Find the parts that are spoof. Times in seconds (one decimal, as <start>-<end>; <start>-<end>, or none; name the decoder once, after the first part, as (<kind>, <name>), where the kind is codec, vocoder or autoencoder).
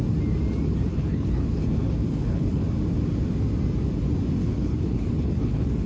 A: 0.9-2.6 (codec, HILCodec); 4.4-5.9